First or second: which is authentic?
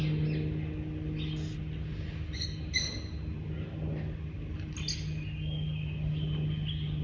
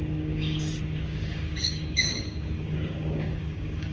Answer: first